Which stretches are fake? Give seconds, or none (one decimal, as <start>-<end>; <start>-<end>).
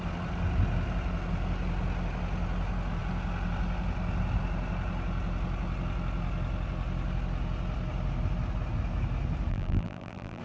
9.5-10.4